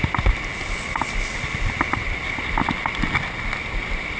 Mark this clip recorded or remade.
recorded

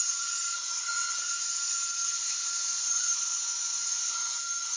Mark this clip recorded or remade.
remade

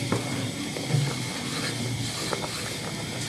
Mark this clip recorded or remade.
remade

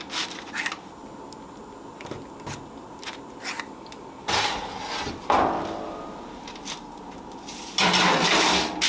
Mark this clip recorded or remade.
recorded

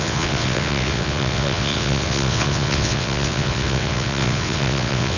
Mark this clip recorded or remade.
remade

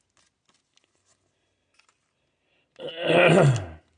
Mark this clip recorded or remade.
recorded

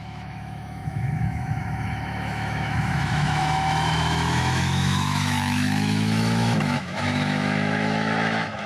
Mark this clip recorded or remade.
remade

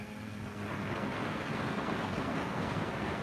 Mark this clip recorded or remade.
remade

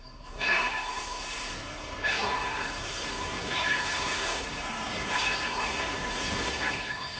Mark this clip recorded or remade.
remade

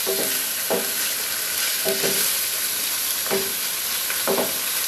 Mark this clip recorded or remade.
recorded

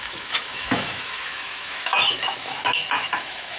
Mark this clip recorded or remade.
remade